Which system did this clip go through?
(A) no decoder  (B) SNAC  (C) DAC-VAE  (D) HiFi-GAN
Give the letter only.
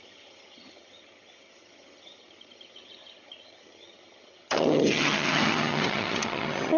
D